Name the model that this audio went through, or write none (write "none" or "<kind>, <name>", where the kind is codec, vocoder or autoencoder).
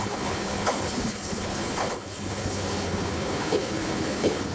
codec, HILCodec